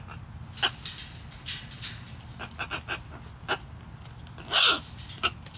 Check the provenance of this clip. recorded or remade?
recorded